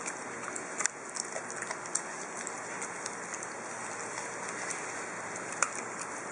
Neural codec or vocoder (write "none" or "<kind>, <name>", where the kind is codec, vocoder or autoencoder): none